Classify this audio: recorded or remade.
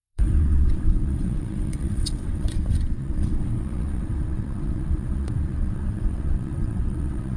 remade